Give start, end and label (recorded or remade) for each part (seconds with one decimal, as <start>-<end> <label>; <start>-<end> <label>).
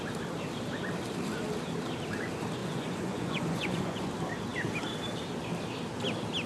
0.0-2.6 recorded; 2.6-4.1 remade; 4.1-6.5 recorded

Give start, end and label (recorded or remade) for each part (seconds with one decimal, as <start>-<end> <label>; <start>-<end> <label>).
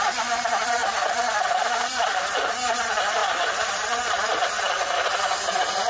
0.0-5.9 recorded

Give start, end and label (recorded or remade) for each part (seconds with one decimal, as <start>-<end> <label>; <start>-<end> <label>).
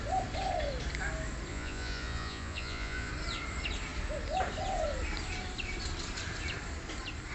0.0-1.5 recorded; 1.5-3.1 remade; 3.1-7.3 recorded